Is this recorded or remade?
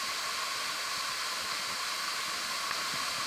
recorded